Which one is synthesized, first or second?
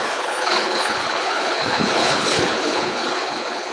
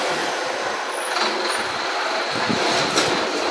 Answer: first